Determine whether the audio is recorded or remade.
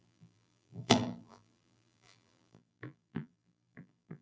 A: remade